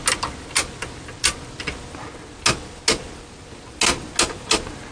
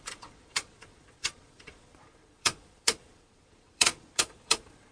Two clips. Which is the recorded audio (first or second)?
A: first